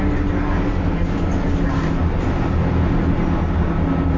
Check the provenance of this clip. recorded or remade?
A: recorded